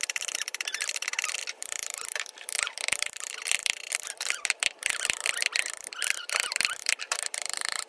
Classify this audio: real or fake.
fake